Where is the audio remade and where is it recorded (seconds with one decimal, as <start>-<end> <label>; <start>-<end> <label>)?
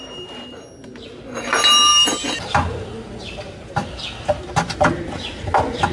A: 0.0-5.9 recorded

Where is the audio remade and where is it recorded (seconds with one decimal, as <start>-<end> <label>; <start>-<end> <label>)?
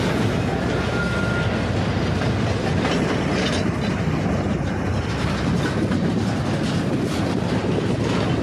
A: 0.0-8.4 recorded